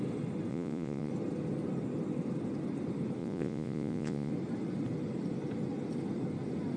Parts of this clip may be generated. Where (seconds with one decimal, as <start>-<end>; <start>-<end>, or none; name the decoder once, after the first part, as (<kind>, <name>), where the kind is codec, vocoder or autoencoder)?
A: 0.5-1.1 (vocoder, Vocos); 3.2-4.3